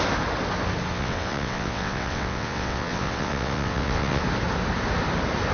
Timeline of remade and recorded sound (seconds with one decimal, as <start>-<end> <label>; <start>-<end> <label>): 0.0-0.9 recorded; 0.9-4.2 remade; 4.2-5.5 recorded